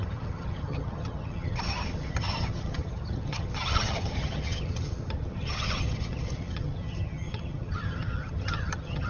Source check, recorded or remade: remade